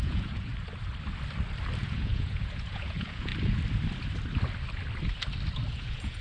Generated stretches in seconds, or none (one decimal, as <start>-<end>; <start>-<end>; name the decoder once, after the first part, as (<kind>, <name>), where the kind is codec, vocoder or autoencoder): 0.0-0.5 (vocoder, Vocos); 1.8-3.3; 5.7-6.2